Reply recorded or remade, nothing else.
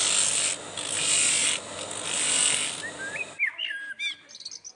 recorded